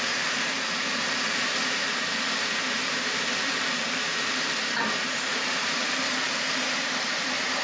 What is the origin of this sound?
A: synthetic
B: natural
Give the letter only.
A